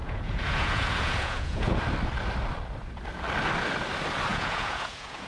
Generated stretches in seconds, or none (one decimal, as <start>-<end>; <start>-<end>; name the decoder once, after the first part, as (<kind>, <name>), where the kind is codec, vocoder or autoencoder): 0.0-1.8 (vocoder, Vocos); 4.3-5.3